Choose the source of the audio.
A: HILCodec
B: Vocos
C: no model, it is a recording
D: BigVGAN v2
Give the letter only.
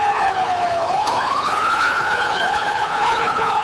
A